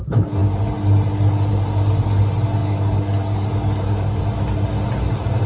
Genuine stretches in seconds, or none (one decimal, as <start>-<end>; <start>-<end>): 0.0-2.6; 4.2-5.5